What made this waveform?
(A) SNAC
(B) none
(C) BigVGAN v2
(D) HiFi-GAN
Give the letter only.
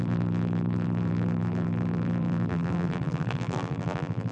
C